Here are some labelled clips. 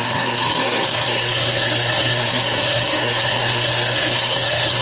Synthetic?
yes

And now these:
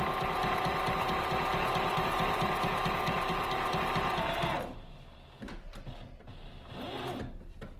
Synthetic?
no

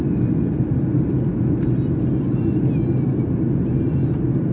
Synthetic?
no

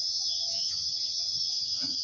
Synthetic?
yes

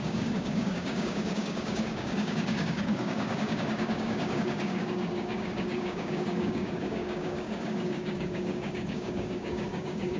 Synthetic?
yes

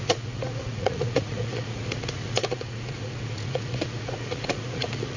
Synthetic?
yes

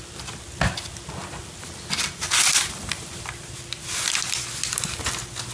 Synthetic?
no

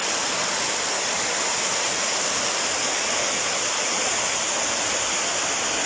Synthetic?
no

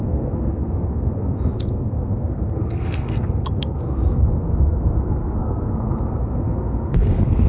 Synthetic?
yes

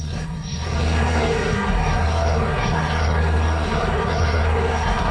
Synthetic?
yes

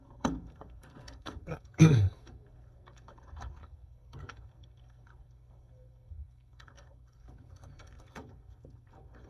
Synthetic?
yes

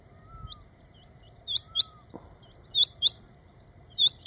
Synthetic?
yes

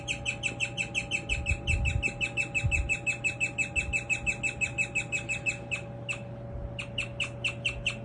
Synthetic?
no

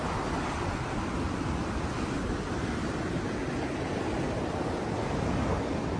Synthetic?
no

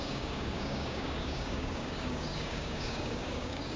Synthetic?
yes